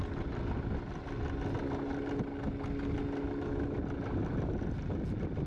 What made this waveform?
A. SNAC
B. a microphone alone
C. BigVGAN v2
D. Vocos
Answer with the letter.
B